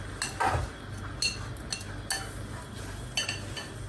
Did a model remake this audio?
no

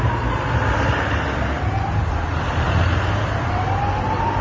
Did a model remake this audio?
no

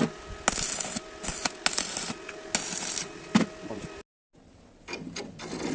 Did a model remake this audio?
no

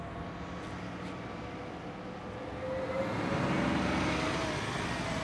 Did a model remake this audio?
no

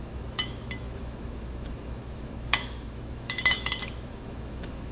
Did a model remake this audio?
yes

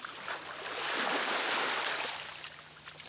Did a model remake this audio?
no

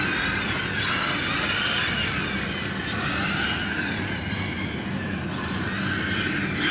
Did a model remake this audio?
no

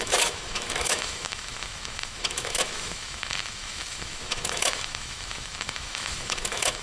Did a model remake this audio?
yes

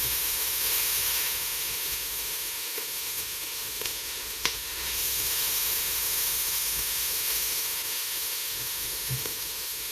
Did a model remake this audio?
yes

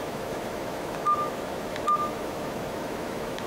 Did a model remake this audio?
yes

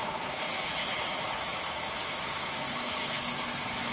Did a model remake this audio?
yes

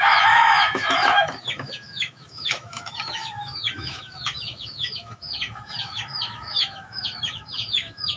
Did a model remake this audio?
yes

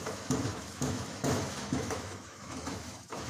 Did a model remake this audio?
yes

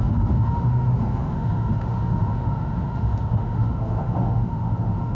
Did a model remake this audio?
yes